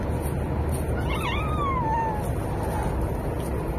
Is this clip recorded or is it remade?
recorded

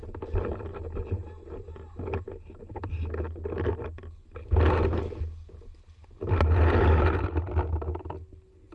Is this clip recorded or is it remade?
recorded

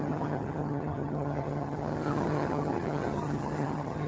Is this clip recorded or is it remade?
remade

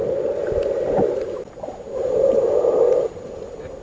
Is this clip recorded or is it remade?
recorded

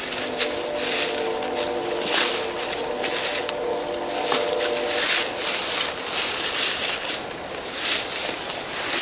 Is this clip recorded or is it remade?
recorded